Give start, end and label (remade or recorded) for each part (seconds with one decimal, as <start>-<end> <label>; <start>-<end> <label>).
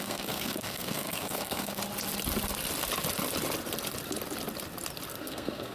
0.0-1.8 remade; 1.8-5.2 recorded; 5.2-5.7 remade